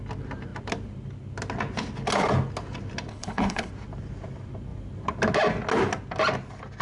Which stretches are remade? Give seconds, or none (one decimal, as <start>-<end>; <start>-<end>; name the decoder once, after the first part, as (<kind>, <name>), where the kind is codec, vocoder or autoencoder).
3.1-3.7 (codec, HILCodec)